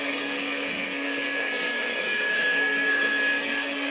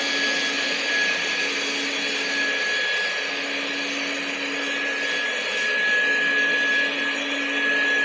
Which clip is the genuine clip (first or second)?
second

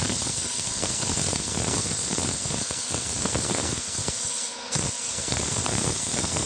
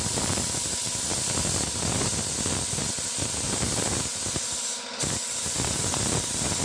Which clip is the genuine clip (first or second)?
second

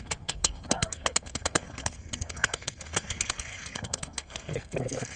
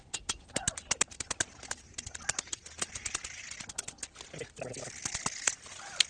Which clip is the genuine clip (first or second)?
second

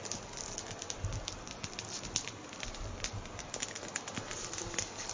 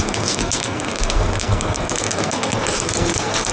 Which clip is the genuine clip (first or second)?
first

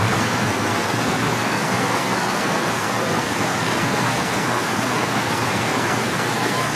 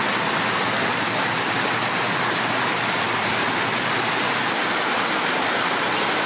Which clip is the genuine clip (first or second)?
second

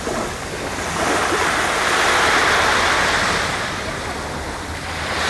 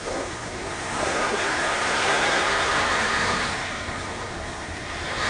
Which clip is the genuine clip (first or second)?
first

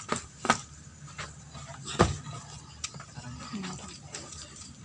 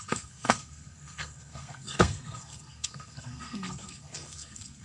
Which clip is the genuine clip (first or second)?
first